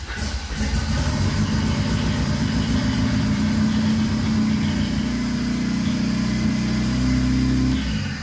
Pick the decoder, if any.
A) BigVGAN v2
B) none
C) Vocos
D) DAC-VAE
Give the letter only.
B